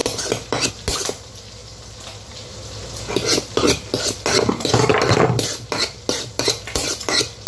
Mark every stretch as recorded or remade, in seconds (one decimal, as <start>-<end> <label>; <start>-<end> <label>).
0.0-7.5 recorded